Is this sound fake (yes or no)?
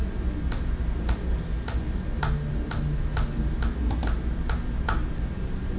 no